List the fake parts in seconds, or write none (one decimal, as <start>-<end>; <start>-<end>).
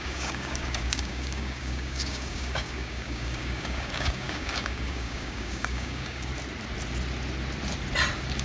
0.0-6.3